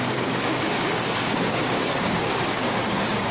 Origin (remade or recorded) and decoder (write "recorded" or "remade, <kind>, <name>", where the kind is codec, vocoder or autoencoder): remade, codec, DAC